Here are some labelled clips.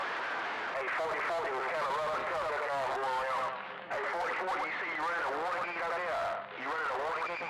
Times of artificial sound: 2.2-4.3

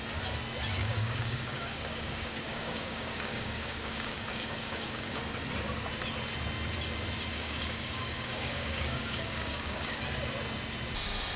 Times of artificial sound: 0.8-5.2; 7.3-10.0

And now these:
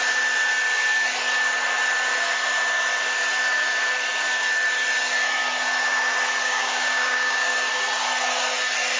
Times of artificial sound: 6.4-7.7

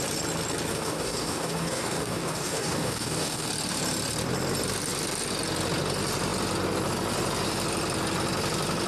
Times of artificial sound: 0.7-3.5

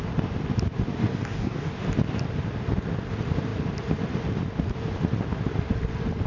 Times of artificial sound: 1.0-1.7

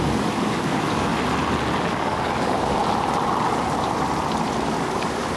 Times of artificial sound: 0.0-1.1; 1.9-2.8; 4.8-5.4

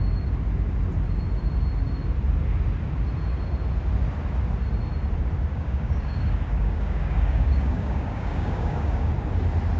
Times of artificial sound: 5.5-9.1